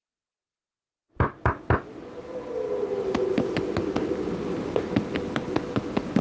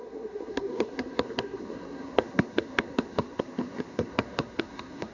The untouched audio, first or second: first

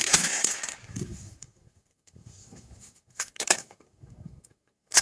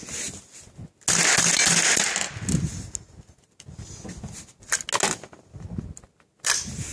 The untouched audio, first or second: second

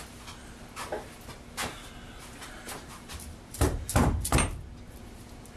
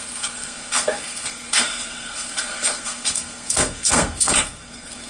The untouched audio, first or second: first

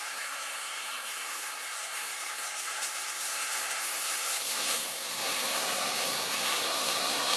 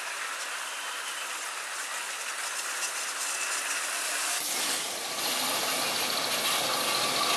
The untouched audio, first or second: second